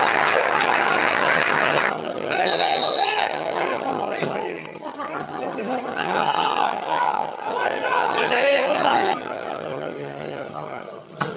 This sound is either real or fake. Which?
fake